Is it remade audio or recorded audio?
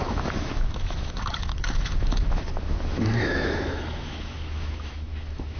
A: remade